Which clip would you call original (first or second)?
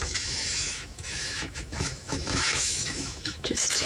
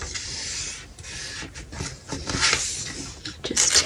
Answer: second